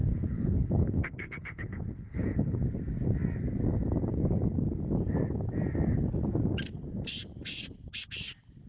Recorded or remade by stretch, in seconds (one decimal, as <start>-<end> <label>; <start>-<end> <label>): 0.0-2.6 remade; 2.6-8.7 recorded